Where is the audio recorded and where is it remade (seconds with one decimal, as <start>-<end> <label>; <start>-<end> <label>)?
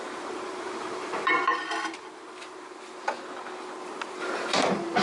0.0-1.5 remade; 1.5-4.2 recorded; 4.2-5.0 remade